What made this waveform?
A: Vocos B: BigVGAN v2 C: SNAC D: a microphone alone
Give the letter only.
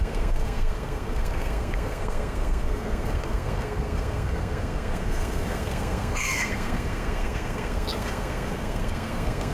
C